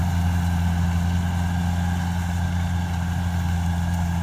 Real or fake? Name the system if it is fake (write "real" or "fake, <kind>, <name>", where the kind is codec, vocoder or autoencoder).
real